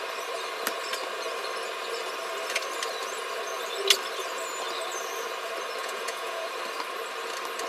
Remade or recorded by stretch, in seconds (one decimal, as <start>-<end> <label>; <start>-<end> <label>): 0.0-5.8 recorded; 5.8-6.5 remade; 6.5-7.7 recorded